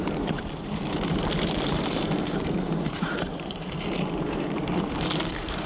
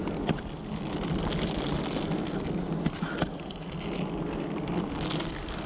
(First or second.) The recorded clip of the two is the second